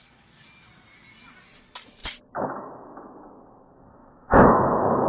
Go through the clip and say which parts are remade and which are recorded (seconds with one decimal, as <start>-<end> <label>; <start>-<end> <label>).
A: 0.0-4.0 recorded; 4.0-4.6 remade; 4.6-5.1 recorded